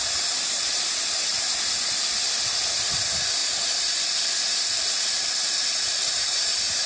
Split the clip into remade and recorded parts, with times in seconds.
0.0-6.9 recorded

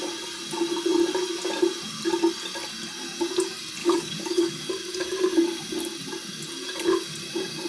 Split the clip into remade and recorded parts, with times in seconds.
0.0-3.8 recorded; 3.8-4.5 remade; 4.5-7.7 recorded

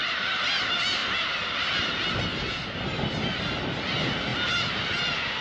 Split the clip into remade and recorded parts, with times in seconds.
0.0-5.4 recorded